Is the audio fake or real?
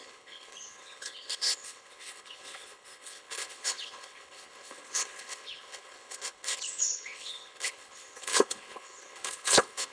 fake